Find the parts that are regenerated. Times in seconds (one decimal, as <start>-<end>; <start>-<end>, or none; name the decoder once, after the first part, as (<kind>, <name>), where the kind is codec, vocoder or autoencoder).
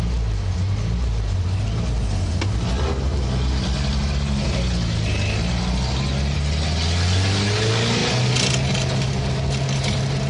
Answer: none